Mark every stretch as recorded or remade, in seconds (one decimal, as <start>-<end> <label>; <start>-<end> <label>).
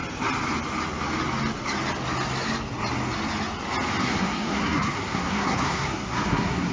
0.0-4.0 recorded; 4.0-6.7 remade